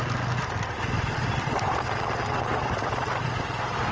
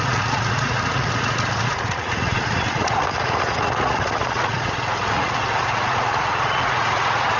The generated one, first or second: second